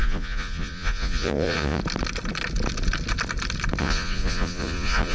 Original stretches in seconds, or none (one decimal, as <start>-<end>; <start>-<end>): 1.8-3.8